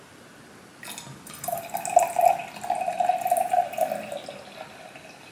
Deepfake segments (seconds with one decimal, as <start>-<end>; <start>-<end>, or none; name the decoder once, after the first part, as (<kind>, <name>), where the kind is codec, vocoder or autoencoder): none